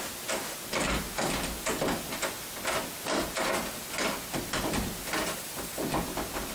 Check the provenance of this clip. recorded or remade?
recorded